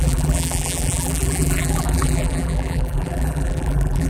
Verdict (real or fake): fake